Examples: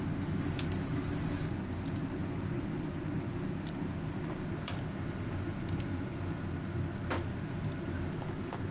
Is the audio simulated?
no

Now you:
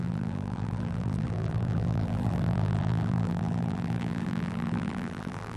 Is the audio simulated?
yes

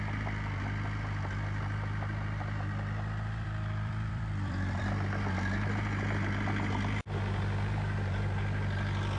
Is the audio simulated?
yes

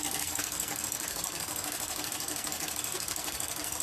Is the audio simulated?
yes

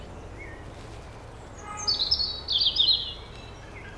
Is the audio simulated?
no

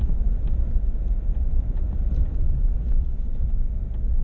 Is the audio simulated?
no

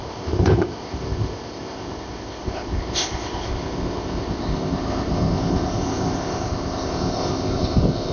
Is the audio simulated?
yes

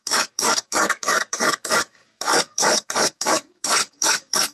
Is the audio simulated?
yes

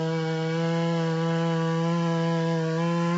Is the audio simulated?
no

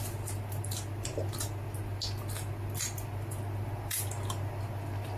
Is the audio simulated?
yes